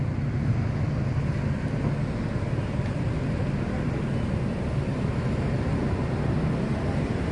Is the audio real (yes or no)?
yes